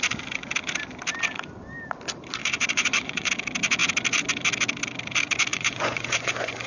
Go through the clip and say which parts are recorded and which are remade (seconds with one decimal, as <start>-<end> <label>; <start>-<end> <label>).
0.0-2.4 recorded; 2.4-3.3 remade; 3.3-5.5 recorded; 5.5-6.7 remade